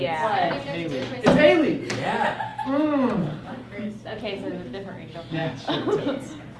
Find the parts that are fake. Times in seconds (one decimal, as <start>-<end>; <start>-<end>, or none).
none